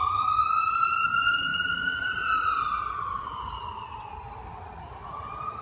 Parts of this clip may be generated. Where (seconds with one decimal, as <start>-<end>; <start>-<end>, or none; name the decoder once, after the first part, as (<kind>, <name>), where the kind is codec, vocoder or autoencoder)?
none